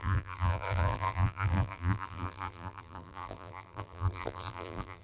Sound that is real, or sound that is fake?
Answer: fake